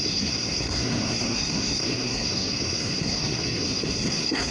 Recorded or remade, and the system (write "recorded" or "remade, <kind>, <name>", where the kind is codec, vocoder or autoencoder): remade, codec, SNAC